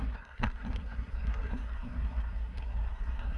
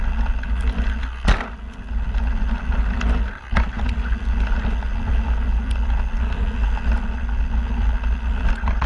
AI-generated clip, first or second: first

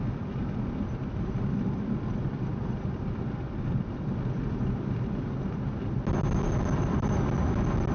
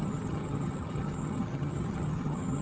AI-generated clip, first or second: second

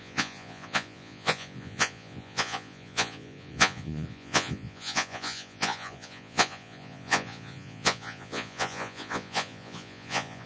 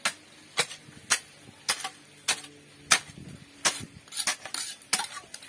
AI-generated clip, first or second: first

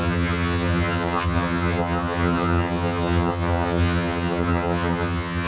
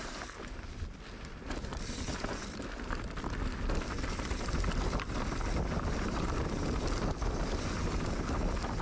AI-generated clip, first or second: first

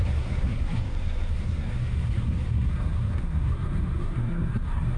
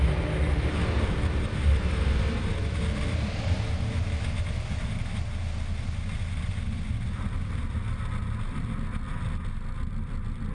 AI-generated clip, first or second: first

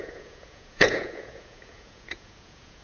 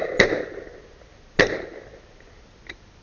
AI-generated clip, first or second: first